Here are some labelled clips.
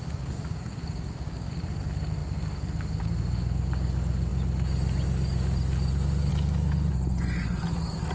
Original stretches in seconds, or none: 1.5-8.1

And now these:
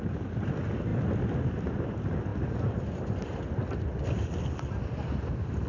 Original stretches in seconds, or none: 0.0-5.7

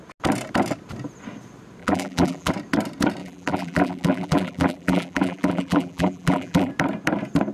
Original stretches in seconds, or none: 0.0-1.8; 2.5-3.2; 6.7-7.5

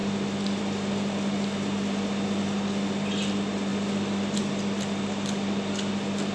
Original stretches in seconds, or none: 0.0-6.3

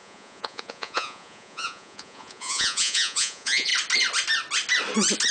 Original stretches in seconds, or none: 3.7-5.3

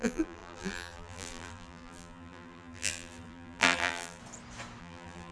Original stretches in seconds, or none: 4.2-4.8

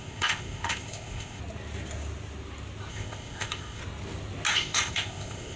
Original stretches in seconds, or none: 1.4-2.9; 3.8-4.5

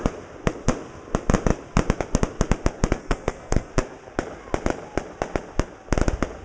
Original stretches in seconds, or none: 0.0-3.0; 3.7-6.4